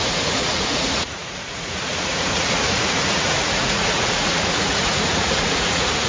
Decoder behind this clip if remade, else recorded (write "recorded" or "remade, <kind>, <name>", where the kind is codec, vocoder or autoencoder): remade, vocoder, Vocos